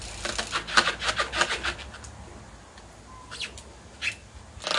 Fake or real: real